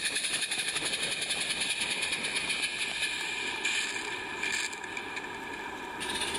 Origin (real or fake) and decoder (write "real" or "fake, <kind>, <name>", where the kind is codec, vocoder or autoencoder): real